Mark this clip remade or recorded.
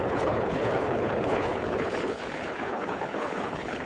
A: remade